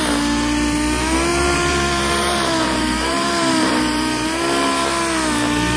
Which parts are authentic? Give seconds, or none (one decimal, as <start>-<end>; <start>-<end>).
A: 0.0-1.3; 4.4-5.8